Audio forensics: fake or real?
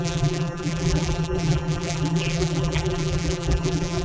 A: fake